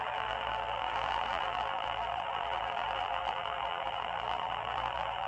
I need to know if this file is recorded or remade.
remade